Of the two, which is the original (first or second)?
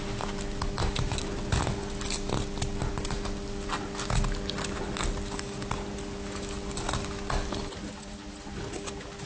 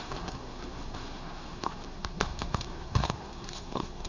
first